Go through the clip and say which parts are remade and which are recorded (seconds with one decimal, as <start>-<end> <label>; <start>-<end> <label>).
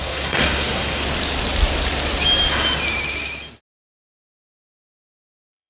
0.0-1.0 remade; 1.0-4.4 recorded; 4.4-5.7 remade